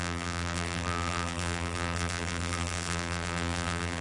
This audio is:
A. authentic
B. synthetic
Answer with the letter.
B